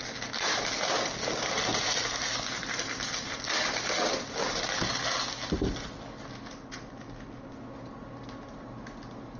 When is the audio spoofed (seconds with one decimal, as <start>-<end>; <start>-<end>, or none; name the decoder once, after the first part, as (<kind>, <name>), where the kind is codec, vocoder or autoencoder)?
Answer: 1.7-2.7 (vocoder, BigVGAN v2)